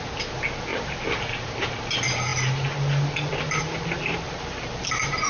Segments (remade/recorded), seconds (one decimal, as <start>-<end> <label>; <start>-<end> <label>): 0.0-4.1 recorded; 4.1-4.8 remade; 4.8-5.3 recorded